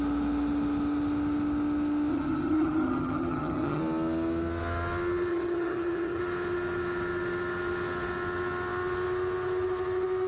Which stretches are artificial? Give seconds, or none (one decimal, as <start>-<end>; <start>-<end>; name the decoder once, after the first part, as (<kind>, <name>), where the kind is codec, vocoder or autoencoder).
2.1-3.8 (vocoder, HiFi-GAN); 5.3-6.2